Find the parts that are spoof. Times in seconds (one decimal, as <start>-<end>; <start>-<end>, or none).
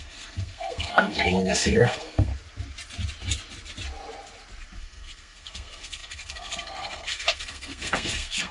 0.0-2.3; 4.8-8.5